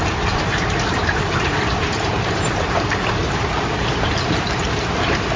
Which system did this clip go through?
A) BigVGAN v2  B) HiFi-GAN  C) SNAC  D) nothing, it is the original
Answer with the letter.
A